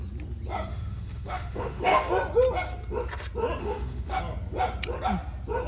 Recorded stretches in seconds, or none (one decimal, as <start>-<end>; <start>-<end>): 0.0-0.7; 2.1-3.6; 4.2-5.7